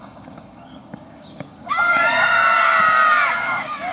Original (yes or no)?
no